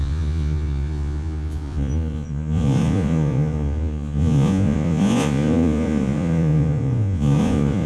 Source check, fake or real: fake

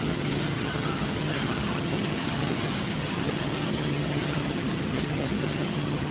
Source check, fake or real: fake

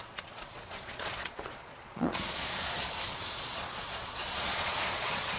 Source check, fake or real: fake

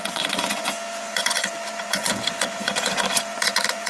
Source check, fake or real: fake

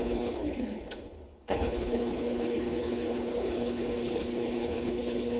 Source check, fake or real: fake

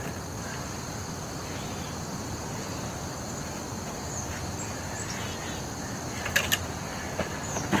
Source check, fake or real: real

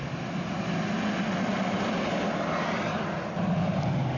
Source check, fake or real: real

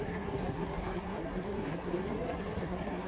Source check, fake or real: fake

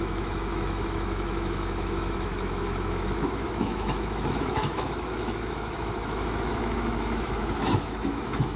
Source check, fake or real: fake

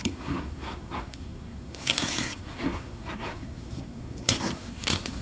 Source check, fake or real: fake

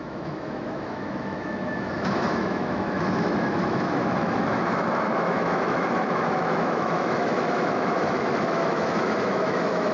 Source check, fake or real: fake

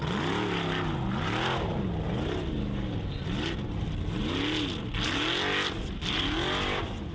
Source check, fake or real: real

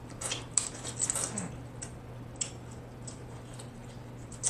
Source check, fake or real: real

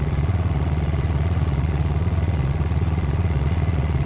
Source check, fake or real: fake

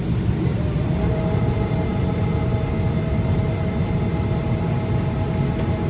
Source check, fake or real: real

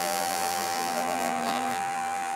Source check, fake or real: fake